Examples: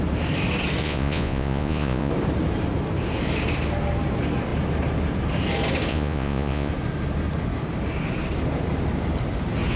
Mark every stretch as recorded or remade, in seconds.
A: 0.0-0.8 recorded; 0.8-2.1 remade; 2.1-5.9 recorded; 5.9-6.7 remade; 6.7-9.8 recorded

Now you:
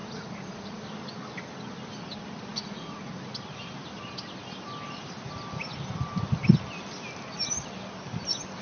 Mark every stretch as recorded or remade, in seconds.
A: 0.0-0.8 remade; 0.8-2.5 recorded; 2.5-3.2 remade; 3.2-8.6 recorded